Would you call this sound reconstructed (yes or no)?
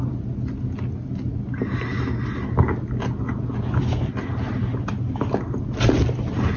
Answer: no